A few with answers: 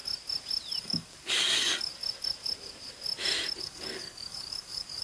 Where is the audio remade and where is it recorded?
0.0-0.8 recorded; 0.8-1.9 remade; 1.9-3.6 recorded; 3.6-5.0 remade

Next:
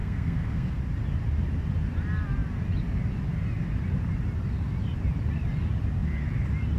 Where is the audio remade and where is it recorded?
0.0-0.8 remade; 0.8-6.8 recorded

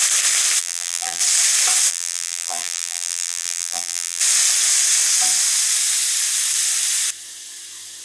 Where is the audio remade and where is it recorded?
0.0-0.6 recorded; 0.6-1.2 remade; 1.2-1.9 recorded; 1.9-4.2 remade; 4.2-8.0 recorded

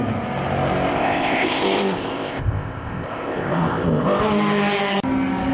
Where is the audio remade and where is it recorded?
0.0-0.9 recorded; 0.9-4.2 remade; 4.2-5.5 recorded